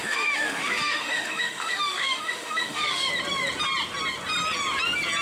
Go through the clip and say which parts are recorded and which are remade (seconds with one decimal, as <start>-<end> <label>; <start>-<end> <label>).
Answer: 0.0-3.1 remade; 3.1-5.2 recorded